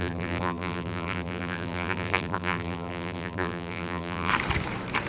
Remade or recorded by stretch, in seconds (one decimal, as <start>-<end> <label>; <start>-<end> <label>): 0.0-4.3 remade; 4.3-5.1 recorded